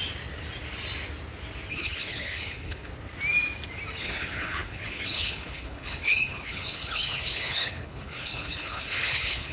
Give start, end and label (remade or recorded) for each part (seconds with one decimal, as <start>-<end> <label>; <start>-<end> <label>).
0.0-1.7 recorded; 1.7-2.9 remade; 2.9-4.0 recorded; 4.0-9.5 remade

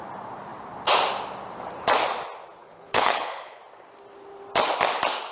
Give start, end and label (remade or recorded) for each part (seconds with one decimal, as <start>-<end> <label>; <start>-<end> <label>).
0.0-2.6 recorded; 2.6-3.6 remade; 3.6-5.3 recorded

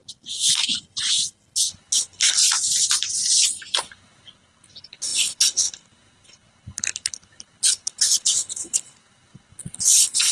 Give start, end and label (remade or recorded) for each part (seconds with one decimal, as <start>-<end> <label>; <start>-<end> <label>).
0.0-1.7 recorded; 1.7-2.4 remade; 2.4-3.8 recorded; 3.8-10.3 remade

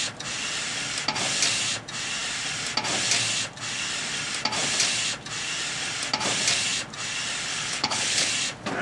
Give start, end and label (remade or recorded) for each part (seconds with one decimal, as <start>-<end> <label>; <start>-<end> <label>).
0.0-7.5 recorded; 7.5-8.3 remade; 8.3-8.8 recorded

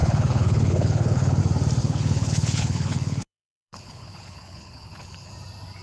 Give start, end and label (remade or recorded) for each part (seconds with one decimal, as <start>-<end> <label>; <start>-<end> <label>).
0.0-1.4 remade; 1.4-1.8 recorded; 1.8-5.3 remade; 5.3-5.8 recorded

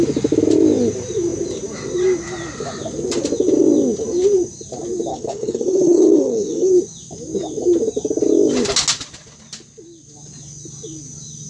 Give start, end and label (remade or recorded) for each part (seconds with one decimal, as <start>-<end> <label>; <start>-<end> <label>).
0.0-5.1 recorded; 5.1-6.7 remade; 6.7-11.5 recorded

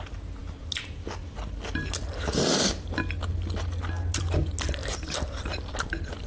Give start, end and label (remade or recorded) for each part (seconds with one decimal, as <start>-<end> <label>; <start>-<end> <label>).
0.0-6.3 recorded